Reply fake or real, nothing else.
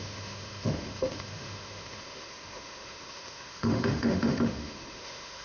fake